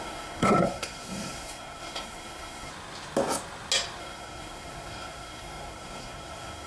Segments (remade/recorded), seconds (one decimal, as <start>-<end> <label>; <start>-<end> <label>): 0.0-2.7 remade; 2.7-4.0 recorded; 4.0-6.7 remade